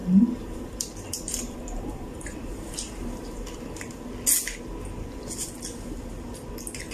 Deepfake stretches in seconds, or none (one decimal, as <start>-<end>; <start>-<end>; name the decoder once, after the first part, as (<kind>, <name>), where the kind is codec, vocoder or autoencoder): 0.0-4.1 (vocoder, BigVGAN v2)